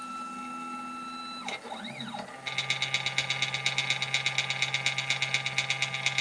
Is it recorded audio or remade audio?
recorded